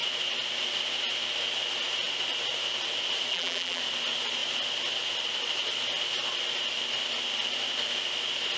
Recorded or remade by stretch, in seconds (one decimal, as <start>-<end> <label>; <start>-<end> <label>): 0.0-3.3 recorded; 3.3-3.8 remade; 3.8-8.6 recorded